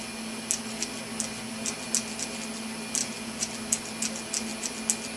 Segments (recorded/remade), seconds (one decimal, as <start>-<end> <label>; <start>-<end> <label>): 0.0-3.0 recorded; 3.0-3.5 remade; 3.5-5.2 recorded